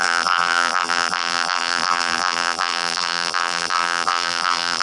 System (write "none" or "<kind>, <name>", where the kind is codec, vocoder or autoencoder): vocoder, BigVGAN v2